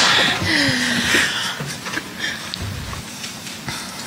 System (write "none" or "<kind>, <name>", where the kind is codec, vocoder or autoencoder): none